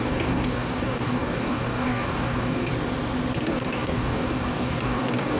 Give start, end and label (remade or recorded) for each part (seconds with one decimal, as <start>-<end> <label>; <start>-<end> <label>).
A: 0.0-2.7 remade; 2.7-3.4 recorded; 3.4-5.4 remade